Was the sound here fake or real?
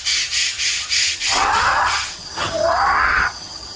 fake